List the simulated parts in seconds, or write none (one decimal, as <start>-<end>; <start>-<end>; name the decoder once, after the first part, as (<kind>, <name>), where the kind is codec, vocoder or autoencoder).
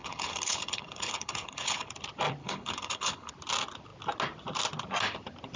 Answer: 0.0-1.9 (codec, HILCodec); 2.4-3.3